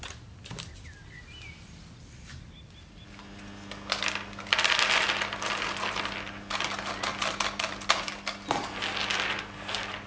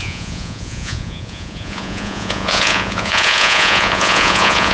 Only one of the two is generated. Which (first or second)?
second